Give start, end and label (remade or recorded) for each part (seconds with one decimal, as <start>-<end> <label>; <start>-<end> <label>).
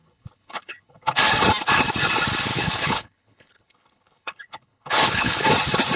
0.0-1.2 remade; 1.2-2.5 recorded; 2.5-5.4 remade; 5.4-6.0 recorded